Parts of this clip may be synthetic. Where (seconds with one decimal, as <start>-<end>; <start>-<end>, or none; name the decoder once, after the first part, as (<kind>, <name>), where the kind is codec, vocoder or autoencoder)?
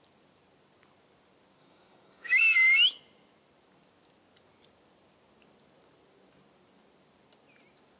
1.6-2.4 (codec, DAC)